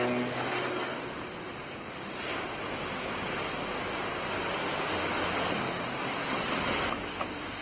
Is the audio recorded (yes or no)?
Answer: yes